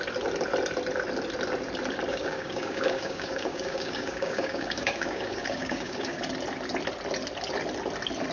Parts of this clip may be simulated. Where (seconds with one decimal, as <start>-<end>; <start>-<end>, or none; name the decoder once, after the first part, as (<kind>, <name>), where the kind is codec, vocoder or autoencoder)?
2.1-6.2 (codec, DAC)